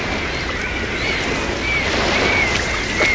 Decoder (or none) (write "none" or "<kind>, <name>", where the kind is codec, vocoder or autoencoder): none